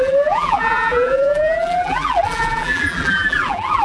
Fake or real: fake